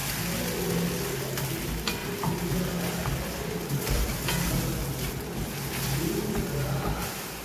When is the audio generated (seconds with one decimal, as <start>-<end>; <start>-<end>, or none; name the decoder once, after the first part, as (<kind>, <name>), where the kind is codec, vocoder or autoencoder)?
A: none